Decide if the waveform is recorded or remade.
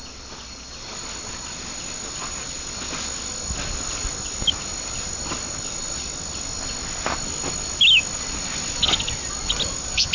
recorded